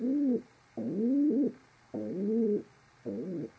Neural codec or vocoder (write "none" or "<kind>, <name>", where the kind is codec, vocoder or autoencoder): none